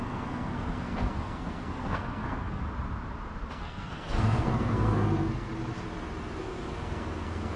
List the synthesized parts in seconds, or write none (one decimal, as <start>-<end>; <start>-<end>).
0.0-2.6; 3.5-5.5; 6.4-7.6